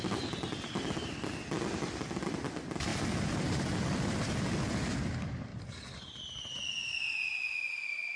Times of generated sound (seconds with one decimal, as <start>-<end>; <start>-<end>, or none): 5.5-6.6